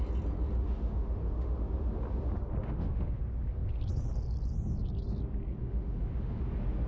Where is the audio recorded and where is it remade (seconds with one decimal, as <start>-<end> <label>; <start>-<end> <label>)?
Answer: 0.0-0.6 recorded; 0.6-1.6 remade; 1.6-2.6 recorded; 2.6-3.2 remade; 3.2-5.6 recorded; 5.6-6.4 remade; 6.4-6.9 recorded